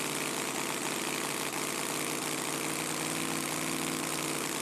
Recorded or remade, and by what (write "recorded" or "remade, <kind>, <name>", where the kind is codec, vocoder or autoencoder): recorded